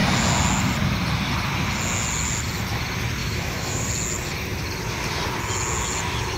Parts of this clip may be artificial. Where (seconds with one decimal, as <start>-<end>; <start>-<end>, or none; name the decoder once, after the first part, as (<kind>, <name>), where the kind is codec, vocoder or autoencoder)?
3.2-3.9 (autoencoder, DAC-VAE)